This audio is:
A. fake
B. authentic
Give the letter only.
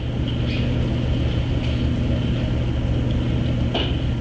B